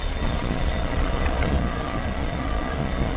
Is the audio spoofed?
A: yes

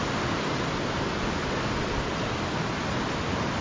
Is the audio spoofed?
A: no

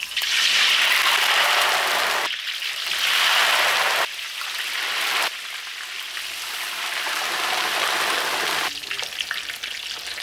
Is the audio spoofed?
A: no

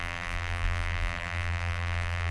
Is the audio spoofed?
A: yes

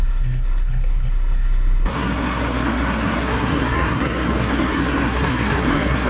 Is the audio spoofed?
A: yes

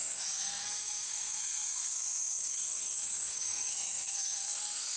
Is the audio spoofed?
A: yes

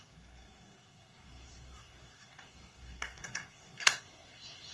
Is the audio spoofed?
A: yes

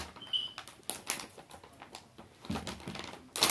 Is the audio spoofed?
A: no